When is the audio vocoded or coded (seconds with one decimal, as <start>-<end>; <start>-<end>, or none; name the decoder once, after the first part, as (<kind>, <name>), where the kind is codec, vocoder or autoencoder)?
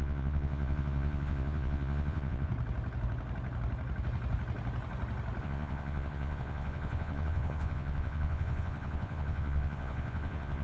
0.0-2.5 (vocoder, Vocos); 5.4-10.6